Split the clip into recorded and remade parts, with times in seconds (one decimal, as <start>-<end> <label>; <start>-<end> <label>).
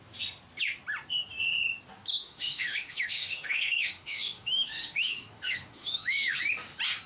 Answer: 0.0-2.1 recorded; 2.1-6.4 remade; 6.4-7.1 recorded